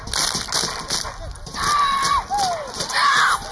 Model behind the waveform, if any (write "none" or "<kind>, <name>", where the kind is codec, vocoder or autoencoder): none